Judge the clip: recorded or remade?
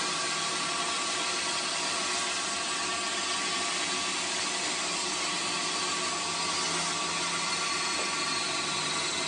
recorded